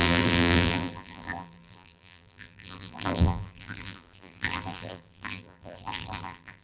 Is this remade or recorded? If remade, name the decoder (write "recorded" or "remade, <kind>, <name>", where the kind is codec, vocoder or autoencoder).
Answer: remade, vocoder, BigVGAN v2